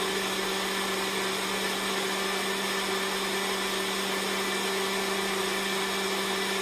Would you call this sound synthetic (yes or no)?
no